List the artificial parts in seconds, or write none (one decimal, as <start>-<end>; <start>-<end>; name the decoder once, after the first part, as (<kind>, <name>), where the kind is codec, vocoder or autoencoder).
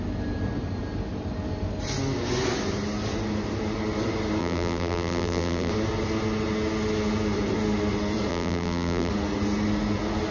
4.4-5.7 (vocoder, BigVGAN v2); 8.3-9.1